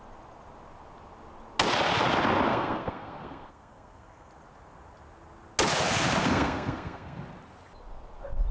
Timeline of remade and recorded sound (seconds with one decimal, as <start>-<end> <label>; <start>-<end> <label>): 0.0-2.5 recorded; 2.5-4.3 remade; 4.3-6.2 recorded; 6.2-7.2 remade; 7.2-8.5 recorded